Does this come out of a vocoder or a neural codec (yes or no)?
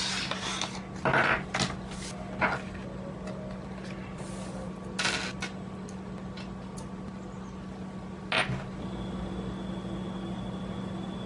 no